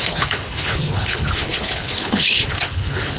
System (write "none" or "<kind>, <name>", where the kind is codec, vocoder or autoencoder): codec, HILCodec